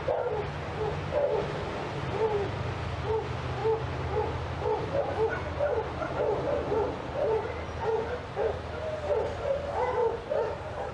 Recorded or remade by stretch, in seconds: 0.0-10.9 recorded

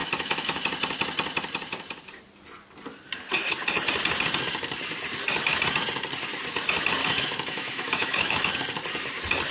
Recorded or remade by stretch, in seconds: 0.0-0.6 remade; 0.6-7.0 recorded; 7.0-8.5 remade; 8.5-9.5 recorded

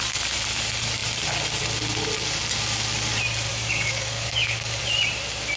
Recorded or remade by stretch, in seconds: 0.0-3.5 recorded; 3.5-4.8 remade; 4.8-5.6 recorded

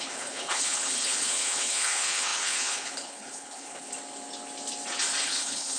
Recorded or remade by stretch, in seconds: 0.0-3.9 remade; 3.9-5.2 recorded; 5.2-5.8 remade